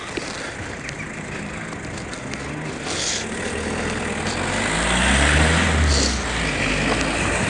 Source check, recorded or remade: recorded